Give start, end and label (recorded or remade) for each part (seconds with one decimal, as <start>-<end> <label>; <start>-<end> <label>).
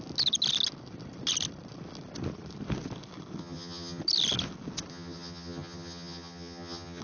0.0-3.4 recorded; 3.4-4.0 remade; 4.0-4.9 recorded; 4.9-7.0 remade